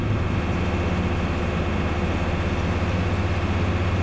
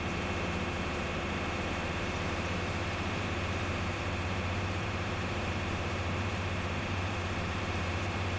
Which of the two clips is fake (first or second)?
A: second